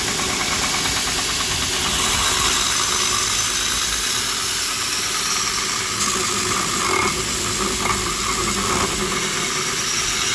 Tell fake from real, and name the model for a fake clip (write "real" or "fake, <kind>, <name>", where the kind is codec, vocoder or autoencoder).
real